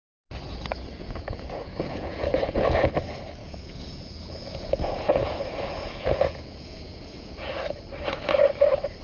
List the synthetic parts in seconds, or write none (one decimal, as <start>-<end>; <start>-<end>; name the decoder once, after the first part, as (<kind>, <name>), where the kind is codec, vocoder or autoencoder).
0.7-2.9 (vocoder, Vocos); 3.4-7.5